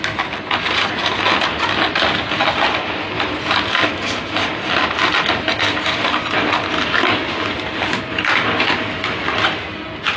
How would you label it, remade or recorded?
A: recorded